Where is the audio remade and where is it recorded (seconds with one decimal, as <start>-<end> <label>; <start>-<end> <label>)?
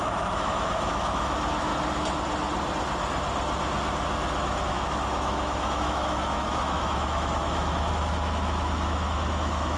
0.0-1.7 remade; 1.7-4.7 recorded; 4.7-9.8 remade